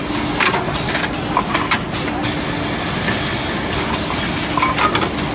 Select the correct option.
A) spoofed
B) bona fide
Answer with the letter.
B